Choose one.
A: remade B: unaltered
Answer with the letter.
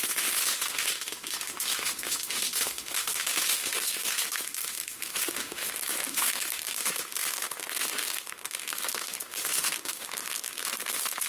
A